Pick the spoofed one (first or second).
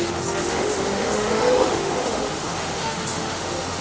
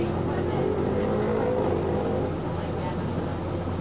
first